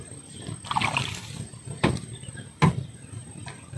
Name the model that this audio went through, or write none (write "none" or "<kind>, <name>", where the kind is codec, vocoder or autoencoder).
none